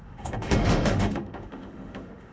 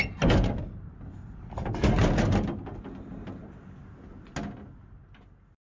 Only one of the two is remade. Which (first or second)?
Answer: first